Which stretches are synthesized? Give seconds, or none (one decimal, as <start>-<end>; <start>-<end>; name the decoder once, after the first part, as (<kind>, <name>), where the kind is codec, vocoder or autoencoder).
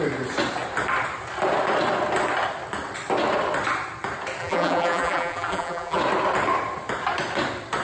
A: 4.4-6.0 (vocoder, BigVGAN v2)